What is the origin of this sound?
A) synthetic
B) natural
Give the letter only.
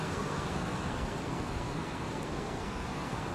A